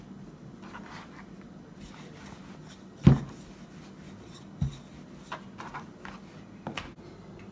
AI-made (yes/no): no